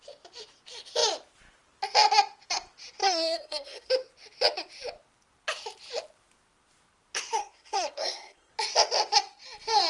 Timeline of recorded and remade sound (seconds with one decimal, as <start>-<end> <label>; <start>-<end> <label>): 0.0-3.0 recorded; 3.0-3.9 remade; 3.9-7.4 recorded; 7.4-8.5 remade; 8.5-9.9 recorded